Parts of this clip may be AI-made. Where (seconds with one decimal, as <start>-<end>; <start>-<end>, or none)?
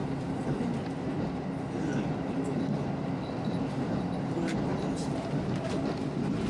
0.0-0.6; 4.7-5.7